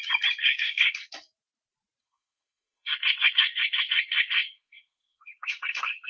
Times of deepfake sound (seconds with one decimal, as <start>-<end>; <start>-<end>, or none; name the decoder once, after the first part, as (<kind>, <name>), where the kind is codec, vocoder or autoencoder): 0.4-1.1 (codec, SNAC); 2.0-6.1